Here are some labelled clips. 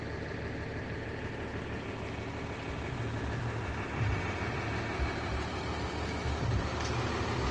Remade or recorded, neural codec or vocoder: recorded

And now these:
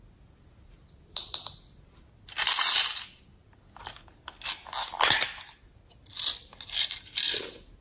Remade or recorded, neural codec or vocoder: recorded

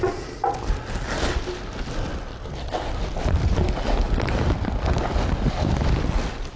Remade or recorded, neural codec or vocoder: recorded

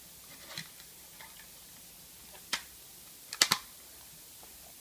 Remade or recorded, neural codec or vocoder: recorded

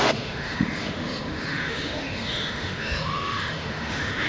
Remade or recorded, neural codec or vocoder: remade, autoencoder, DAC-VAE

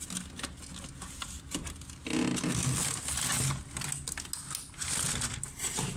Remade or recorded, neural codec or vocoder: recorded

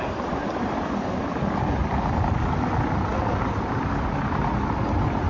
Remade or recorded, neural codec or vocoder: recorded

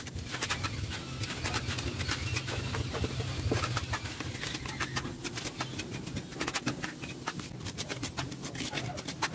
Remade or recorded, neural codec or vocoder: recorded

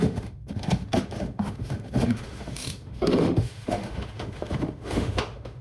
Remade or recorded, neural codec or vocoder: remade, autoencoder, DAC-VAE